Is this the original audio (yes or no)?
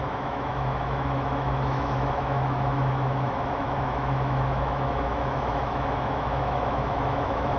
no